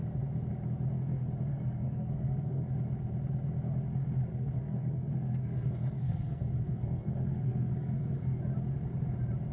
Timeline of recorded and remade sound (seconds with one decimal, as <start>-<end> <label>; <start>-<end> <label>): 0.0-1.5 recorded; 1.5-2.7 remade; 2.7-4.3 recorded; 4.3-8.4 remade; 8.4-9.5 recorded